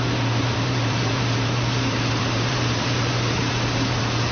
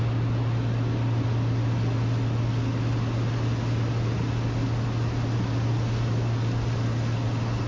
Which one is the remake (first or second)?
first